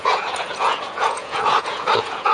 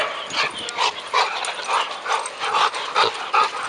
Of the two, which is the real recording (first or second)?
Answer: second